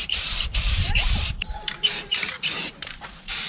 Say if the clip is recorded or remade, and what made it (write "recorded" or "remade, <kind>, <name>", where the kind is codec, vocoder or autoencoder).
remade, vocoder, BigVGAN v2